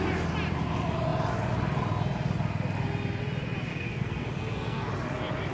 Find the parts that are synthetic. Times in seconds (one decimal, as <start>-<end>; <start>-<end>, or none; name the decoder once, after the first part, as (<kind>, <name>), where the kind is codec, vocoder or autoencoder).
3.7-4.9 (codec, SNAC)